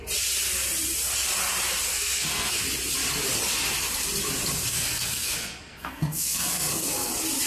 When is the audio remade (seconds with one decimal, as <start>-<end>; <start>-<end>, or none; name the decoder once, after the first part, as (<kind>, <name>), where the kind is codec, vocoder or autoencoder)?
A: 1.9-2.6 (codec, SNAC); 4.7-7.1